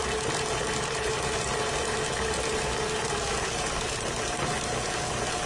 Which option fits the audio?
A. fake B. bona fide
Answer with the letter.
B